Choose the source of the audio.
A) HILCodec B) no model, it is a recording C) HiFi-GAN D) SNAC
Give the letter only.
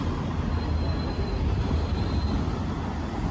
B